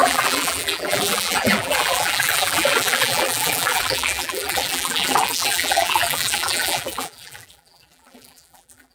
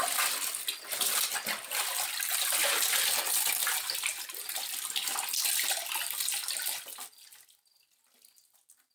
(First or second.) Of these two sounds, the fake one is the first